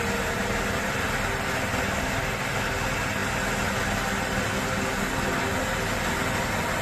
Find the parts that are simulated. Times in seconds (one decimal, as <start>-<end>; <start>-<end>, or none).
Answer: none